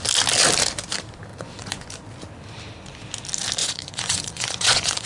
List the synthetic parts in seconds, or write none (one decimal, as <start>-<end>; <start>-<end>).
1.3-1.9; 3.6-5.1